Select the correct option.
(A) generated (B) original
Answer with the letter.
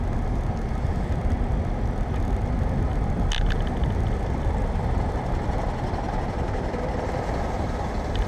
B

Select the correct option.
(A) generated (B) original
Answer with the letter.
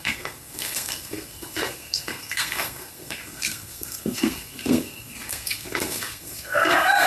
A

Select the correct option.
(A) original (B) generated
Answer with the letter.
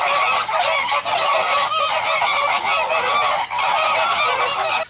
A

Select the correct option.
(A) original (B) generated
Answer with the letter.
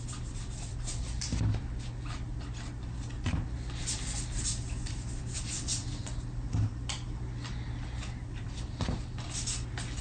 A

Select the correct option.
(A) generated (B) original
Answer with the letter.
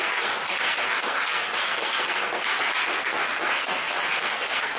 A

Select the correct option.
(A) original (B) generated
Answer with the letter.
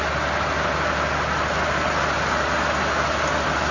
A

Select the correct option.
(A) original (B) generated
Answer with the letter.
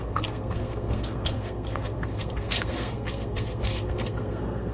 B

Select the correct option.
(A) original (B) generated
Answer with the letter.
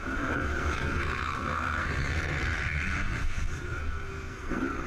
B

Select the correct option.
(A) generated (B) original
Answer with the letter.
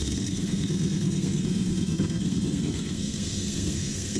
A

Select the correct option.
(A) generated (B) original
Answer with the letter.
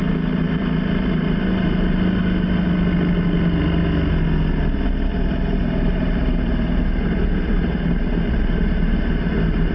B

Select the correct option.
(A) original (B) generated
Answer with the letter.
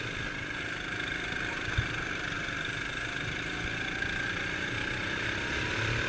A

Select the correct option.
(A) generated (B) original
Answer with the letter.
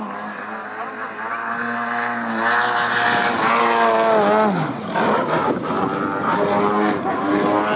B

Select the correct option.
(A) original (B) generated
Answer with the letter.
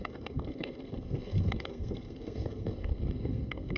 B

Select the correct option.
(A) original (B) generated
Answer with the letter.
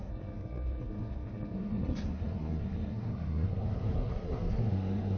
B